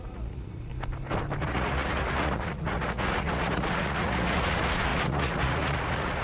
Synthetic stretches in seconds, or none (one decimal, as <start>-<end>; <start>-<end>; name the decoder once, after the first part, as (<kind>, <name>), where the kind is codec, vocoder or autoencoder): 0.0-0.7 (vocoder, Vocos); 1.4-6.2